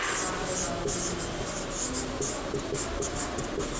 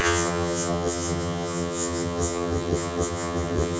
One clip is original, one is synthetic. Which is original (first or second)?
first